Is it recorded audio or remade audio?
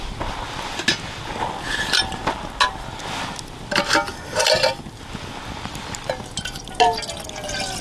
recorded